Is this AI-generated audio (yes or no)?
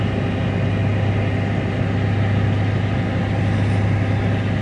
no